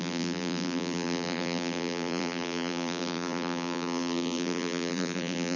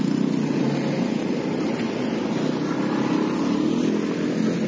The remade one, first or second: first